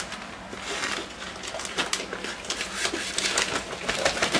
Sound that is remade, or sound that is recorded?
recorded